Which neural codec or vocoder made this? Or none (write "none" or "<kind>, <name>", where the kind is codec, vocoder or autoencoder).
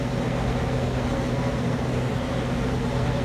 codec, SNAC